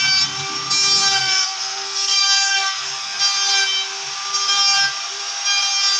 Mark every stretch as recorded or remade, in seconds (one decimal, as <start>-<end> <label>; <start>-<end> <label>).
0.0-1.2 recorded; 1.2-3.2 remade; 3.2-6.0 recorded